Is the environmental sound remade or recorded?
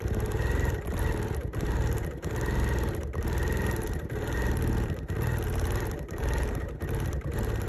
remade